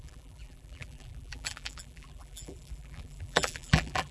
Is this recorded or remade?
remade